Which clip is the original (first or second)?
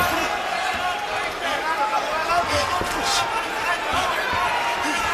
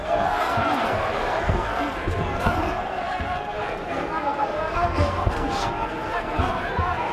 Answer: first